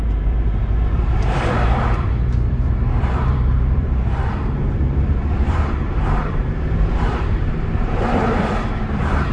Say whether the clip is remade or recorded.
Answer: remade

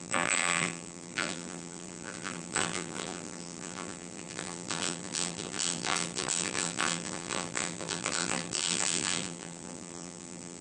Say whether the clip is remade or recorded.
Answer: remade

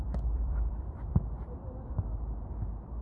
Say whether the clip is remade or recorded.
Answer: remade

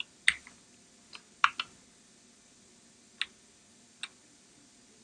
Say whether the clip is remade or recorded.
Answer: recorded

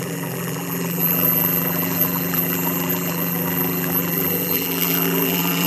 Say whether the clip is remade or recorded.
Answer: remade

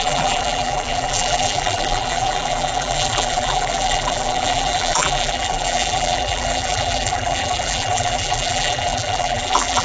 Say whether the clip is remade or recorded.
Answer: remade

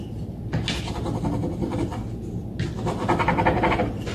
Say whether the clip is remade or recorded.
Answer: recorded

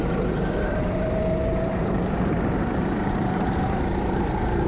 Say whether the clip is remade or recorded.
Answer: remade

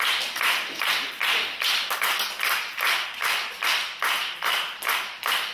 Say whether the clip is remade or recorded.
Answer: remade